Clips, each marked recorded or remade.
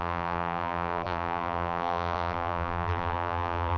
remade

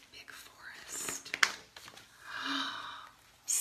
recorded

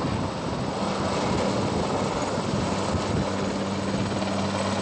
recorded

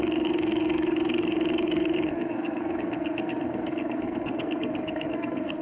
remade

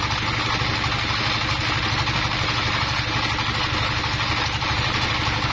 recorded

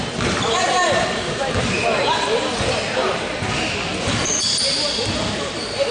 recorded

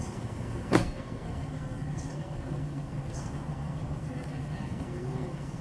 remade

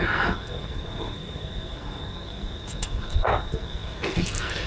remade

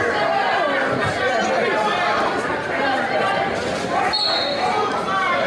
recorded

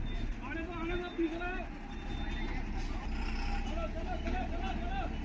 recorded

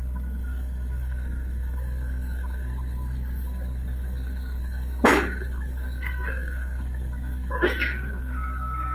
remade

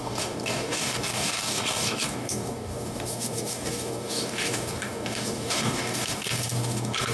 remade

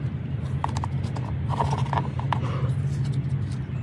recorded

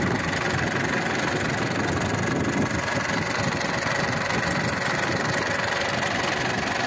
recorded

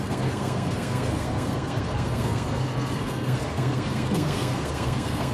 remade